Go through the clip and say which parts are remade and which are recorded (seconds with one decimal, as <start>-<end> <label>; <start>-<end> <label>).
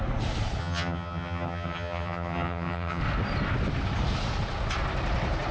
0.0-0.6 recorded; 0.6-3.0 remade; 3.0-5.5 recorded